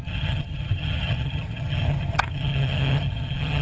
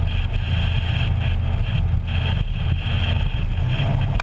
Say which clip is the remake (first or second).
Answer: first